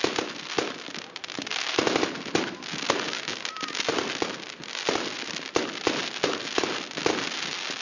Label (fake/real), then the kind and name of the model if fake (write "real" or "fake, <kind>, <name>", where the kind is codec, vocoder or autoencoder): real